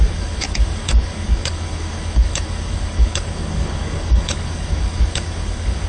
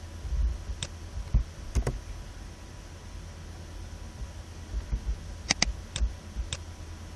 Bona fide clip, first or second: second